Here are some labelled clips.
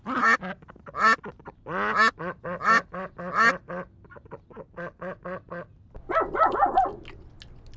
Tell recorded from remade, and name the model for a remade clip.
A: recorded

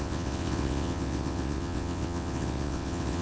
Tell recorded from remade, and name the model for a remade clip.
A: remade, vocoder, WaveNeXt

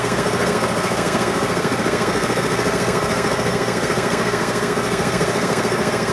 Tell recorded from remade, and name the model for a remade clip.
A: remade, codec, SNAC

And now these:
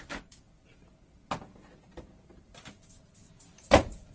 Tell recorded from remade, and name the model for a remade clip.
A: recorded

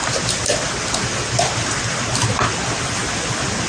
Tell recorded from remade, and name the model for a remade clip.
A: recorded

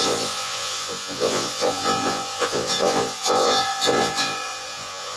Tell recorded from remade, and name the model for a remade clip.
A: remade, vocoder, Vocos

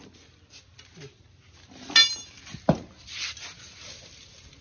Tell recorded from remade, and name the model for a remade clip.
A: recorded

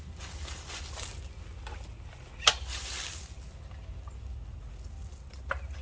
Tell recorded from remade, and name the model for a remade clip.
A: recorded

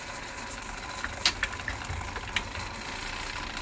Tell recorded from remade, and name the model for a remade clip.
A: recorded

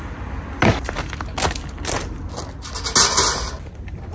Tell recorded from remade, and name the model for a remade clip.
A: recorded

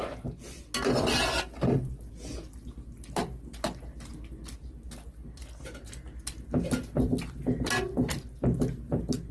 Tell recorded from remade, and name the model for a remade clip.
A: recorded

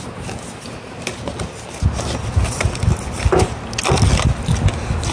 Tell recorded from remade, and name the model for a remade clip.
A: recorded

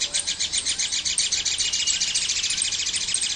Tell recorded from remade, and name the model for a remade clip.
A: recorded